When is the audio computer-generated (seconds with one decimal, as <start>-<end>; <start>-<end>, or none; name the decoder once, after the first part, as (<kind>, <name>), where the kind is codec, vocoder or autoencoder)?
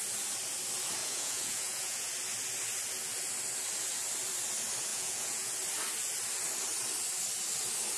1.0-2.1 (vocoder, Vocos); 4.9-5.5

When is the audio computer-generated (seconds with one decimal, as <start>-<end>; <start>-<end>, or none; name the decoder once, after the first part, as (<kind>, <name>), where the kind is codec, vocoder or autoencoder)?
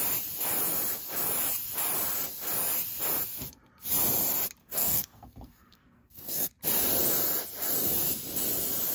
4.6-6.5 (codec, SNAC)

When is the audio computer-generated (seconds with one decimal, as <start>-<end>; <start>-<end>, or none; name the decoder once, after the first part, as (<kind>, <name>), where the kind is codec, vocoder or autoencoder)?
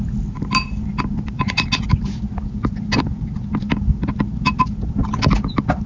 none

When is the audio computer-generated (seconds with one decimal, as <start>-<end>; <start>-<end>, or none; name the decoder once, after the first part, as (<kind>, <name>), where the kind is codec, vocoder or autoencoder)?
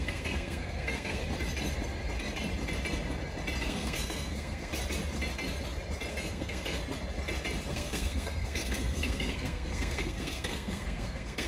0.0-1.2 (codec, SNAC); 3.6-4.7; 6.1-6.8; 7.7-11.5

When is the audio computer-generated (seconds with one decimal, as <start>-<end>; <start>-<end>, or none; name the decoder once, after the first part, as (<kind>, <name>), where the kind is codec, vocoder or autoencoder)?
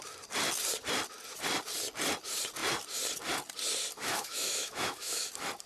4.0-5.3 (autoencoder, DAC-VAE)